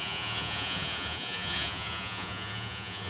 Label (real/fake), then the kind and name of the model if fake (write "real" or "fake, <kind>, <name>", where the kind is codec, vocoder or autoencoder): fake, vocoder, Vocos